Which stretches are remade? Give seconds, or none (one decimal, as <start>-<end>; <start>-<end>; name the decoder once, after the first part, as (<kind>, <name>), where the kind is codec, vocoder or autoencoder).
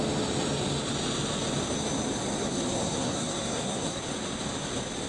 2.4-4.0 (codec, SNAC)